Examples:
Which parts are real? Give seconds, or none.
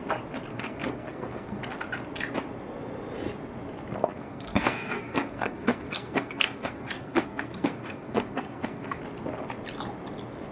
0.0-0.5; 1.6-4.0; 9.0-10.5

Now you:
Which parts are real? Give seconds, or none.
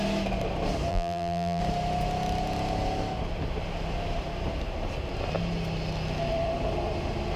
0.0-0.9; 1.6-7.4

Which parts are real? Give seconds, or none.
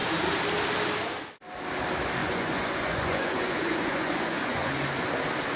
0.0-2.2; 4.7-5.6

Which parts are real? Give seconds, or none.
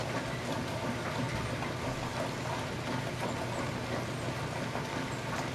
0.0-5.5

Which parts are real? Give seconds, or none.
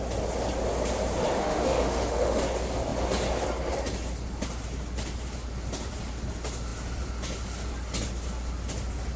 0.0-1.4; 2.4-9.2